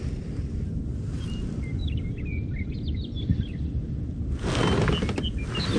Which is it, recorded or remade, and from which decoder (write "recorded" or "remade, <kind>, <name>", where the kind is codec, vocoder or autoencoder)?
recorded